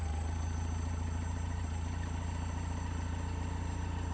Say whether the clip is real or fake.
real